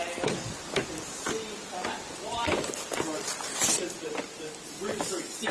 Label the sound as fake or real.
real